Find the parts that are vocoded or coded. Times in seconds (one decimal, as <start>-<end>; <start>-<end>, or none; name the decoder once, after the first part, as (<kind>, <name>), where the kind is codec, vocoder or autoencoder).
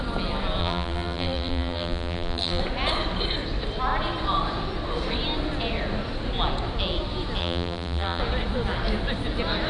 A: 0.6-2.6 (vocoder, BigVGAN v2); 7.4-8.2